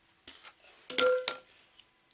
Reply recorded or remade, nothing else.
recorded